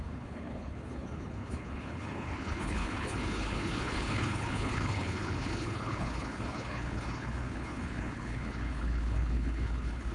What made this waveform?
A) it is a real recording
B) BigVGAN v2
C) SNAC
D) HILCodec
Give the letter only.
D